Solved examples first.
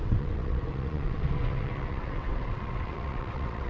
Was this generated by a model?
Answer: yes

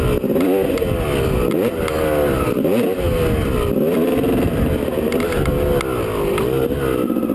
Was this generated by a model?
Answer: no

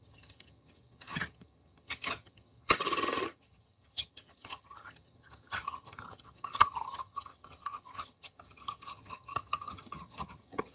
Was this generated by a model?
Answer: yes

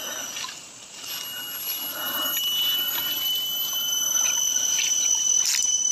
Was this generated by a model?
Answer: no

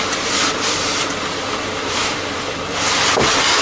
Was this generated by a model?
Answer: yes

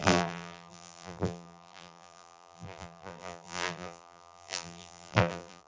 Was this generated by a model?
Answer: yes